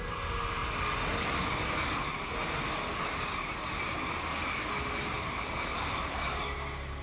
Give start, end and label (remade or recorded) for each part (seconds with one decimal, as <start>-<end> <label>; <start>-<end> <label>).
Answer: 0.0-7.0 recorded